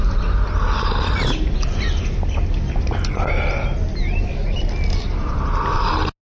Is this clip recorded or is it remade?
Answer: recorded